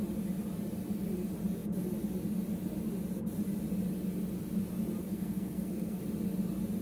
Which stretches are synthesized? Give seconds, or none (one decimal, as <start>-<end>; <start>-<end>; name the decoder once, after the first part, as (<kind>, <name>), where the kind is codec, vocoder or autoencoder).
5.0-6.0 (codec, SNAC)